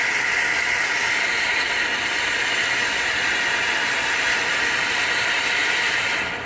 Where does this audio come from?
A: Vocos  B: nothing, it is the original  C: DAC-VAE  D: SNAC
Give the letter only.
B